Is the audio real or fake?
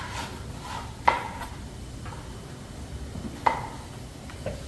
real